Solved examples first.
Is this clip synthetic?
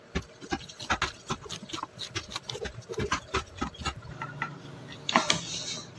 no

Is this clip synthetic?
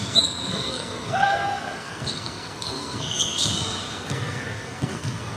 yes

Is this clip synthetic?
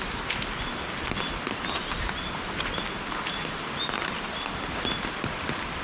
no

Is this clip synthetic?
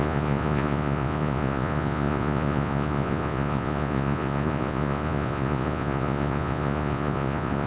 yes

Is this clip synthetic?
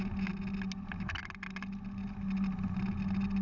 no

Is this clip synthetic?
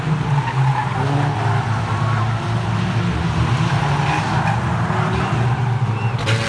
no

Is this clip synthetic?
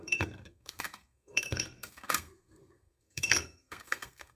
yes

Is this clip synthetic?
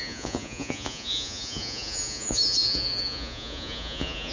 yes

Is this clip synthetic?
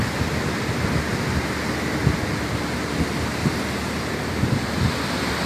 no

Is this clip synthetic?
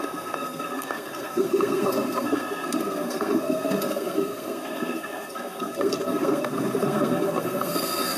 yes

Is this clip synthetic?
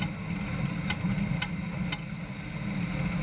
no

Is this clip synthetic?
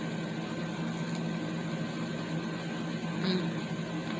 no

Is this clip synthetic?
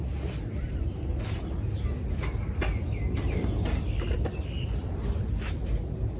no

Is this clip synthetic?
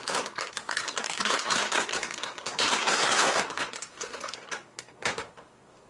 yes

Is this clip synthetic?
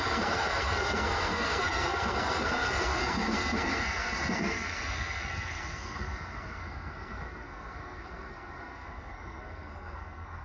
yes